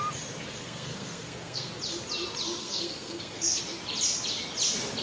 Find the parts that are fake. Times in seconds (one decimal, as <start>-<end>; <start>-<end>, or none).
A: 0.5-1.7; 2.6-3.6